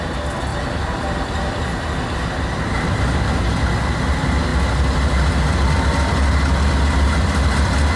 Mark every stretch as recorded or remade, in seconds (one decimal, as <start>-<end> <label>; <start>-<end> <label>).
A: 0.0-0.5 recorded; 0.5-3.4 remade; 3.4-8.0 recorded